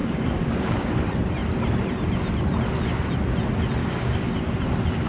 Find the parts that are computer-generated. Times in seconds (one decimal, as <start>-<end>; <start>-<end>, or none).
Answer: 0.0-0.9; 3.8-4.3